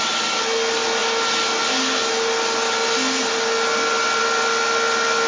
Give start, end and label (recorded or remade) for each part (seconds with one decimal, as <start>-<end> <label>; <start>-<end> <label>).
0.0-5.3 recorded